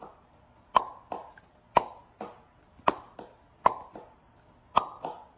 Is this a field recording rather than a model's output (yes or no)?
yes